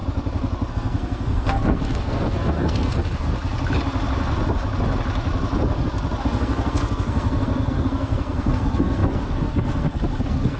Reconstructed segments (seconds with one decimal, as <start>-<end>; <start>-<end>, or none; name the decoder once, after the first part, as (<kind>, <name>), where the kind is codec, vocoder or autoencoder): 0.7-3.3 (codec, SNAC); 6.2-10.6